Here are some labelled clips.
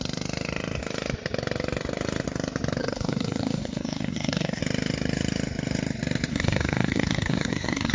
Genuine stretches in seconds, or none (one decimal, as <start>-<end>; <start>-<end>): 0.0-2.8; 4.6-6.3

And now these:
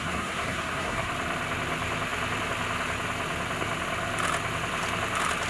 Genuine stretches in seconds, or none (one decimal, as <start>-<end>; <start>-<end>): 1.1-5.5

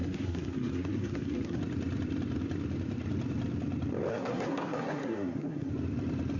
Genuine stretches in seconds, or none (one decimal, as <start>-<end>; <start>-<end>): 1.6-4.1; 5.7-6.4

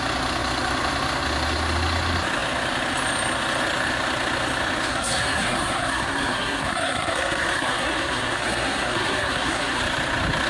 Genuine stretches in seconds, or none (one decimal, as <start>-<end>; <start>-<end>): 0.0-4.9; 9.8-10.5

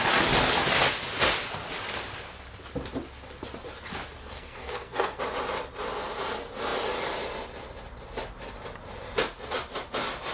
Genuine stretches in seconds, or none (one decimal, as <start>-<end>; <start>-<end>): 0.0-4.2; 5.2-10.3

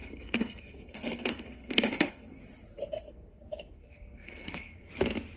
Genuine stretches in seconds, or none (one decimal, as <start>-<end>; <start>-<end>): 2.4-2.9; 4.9-5.4